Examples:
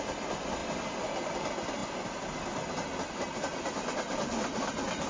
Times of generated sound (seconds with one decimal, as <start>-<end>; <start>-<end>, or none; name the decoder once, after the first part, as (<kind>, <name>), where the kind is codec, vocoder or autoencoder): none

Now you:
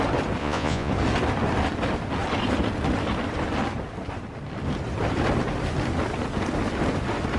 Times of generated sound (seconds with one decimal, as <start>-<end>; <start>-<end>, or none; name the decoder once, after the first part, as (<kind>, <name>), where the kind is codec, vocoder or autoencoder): 0.4-0.9 (vocoder, Vocos)

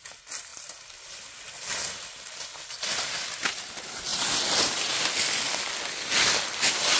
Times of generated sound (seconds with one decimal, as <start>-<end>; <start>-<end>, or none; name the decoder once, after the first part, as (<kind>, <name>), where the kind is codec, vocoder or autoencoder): none

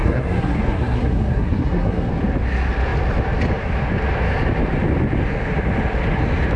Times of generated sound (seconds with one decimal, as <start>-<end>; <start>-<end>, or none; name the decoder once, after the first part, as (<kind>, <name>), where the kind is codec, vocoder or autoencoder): 0.0-2.1 (codec, SNAC)

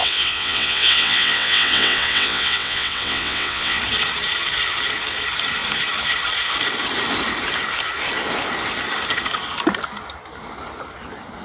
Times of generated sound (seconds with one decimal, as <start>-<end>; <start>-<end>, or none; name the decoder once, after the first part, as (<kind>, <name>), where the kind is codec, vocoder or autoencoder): 0.0-3.8 (vocoder, WaveNeXt)

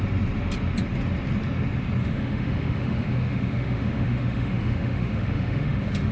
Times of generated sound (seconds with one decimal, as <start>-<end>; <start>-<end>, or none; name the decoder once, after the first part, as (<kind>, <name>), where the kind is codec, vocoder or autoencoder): 2.0-6.1 (autoencoder, DAC-VAE)

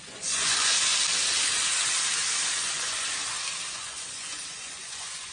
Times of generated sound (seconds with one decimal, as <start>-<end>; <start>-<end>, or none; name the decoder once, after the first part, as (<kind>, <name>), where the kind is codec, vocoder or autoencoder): 0.0-0.9 (vocoder, Vocos); 2.6-3.1; 3.7-5.3